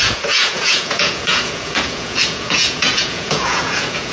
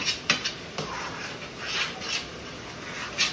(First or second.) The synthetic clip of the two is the first